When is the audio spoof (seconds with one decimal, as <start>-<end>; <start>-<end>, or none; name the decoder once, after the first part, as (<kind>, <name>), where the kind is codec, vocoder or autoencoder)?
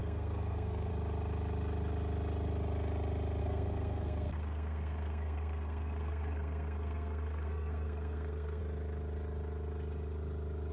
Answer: 0.0-0.9 (codec, SNAC); 3.4-8.6